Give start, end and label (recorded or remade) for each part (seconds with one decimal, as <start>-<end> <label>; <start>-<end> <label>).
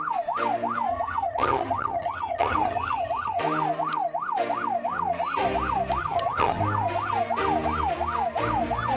0.0-0.9 recorded; 0.9-3.4 remade; 3.4-6.0 recorded; 6.0-6.6 remade; 6.6-9.0 recorded